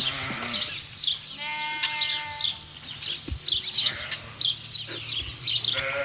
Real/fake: real